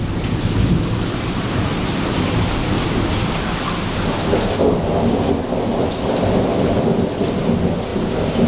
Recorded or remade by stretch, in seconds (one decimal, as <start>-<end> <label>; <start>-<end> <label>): 0.0-7.9 recorded; 7.9-8.5 remade

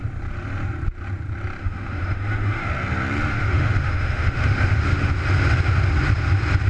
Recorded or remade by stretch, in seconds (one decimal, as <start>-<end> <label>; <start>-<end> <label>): 0.0-1.6 recorded; 1.6-2.7 remade; 2.7-3.3 recorded; 3.3-5.1 remade; 5.1-6.7 recorded

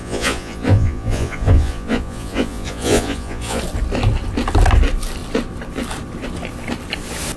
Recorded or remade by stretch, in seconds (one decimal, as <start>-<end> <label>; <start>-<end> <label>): 0.0-3.6 remade; 3.6-7.4 recorded